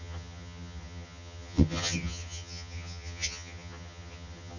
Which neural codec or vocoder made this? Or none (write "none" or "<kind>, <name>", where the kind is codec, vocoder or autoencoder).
vocoder, HiFi-GAN